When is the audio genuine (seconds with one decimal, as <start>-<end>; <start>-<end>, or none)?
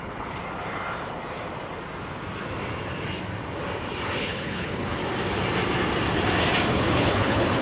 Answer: 0.4-4.2; 5.0-6.7